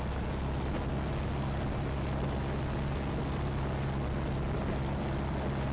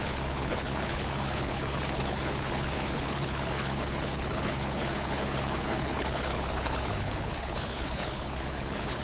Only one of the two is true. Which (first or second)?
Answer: first